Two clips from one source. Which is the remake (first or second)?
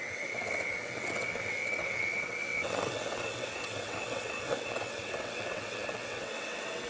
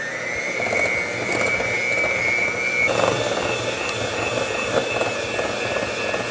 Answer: first